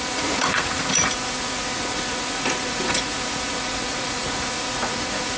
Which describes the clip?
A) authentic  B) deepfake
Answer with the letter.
B